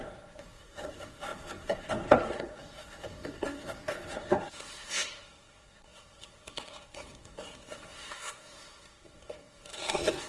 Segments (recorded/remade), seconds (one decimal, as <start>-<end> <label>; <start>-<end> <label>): 0.0-10.3 remade